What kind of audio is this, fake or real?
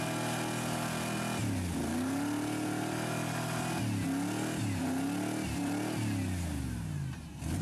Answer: real